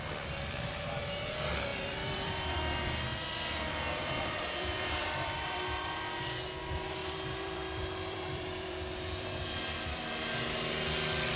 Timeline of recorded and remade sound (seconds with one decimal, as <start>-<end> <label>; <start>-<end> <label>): 0.0-1.7 recorded; 1.7-2.6 remade; 2.6-3.1 recorded; 3.1-6.4 remade; 6.4-7.0 recorded; 7.0-10.1 remade; 10.1-11.4 recorded